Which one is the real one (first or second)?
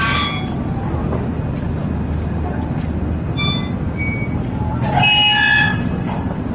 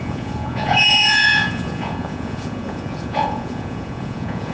first